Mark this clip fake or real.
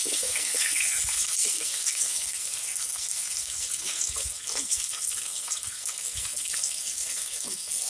fake